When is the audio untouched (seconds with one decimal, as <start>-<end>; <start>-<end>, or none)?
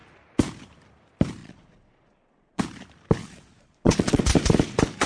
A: 0.0-1.4; 2.6-3.2; 4.2-5.1